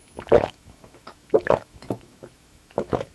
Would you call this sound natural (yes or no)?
no